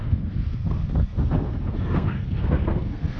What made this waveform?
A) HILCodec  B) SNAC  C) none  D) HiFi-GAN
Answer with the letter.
B